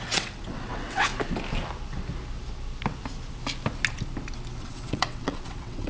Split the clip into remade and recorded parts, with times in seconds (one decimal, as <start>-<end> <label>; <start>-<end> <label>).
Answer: 0.0-1.1 remade; 1.1-4.6 recorded; 4.6-5.9 remade